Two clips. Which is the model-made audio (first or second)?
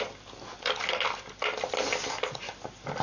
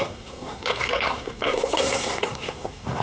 second